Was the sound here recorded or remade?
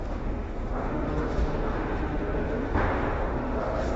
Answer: remade